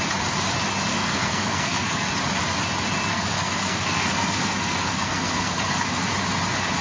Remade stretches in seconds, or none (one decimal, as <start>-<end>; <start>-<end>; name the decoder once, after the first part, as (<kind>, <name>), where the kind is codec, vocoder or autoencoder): 0.9-2.1 (codec, SNAC); 3.1-5.8